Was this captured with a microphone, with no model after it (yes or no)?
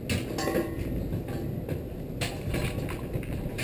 yes